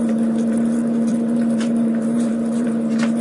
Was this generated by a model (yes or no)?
yes